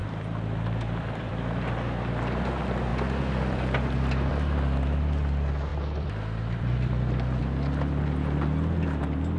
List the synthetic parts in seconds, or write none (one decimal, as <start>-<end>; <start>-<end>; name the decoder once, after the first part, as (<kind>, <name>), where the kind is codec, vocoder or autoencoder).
0.0-1.5 (vocoder, BigVGAN v2); 2.9-4.3; 5.7-7.4